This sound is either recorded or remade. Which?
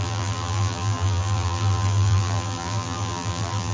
remade